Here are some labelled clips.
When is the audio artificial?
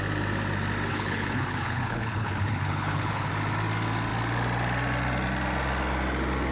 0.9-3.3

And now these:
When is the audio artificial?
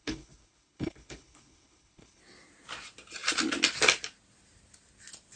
0.0-2.2